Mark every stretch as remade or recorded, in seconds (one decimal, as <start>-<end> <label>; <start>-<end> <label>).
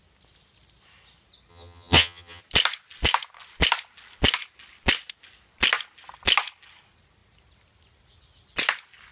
0.0-1.5 recorded; 1.5-2.4 remade; 2.4-9.1 recorded